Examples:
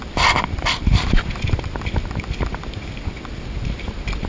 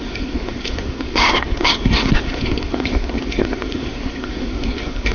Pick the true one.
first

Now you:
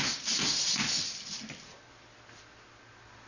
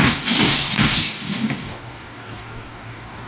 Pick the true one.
first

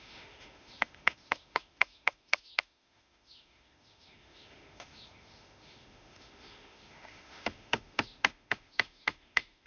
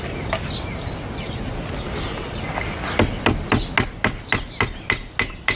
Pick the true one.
second